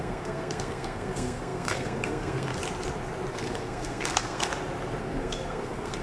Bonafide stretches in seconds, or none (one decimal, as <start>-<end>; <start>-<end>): 2.5-3.3; 4.5-5.0